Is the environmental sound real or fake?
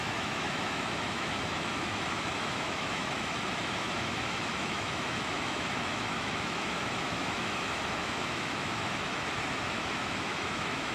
fake